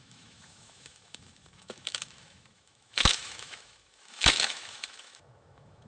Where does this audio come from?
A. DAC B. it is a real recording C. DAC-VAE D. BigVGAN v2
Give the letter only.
C